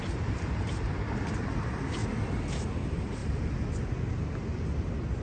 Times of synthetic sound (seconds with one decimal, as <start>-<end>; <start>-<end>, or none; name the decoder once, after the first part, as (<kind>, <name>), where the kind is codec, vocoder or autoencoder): 0.0-2.0 (vocoder, BigVGAN v2); 2.5-3.2